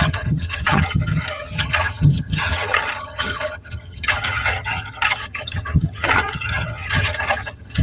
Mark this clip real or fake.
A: fake